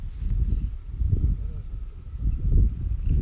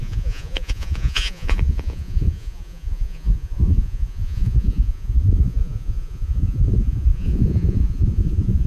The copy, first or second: second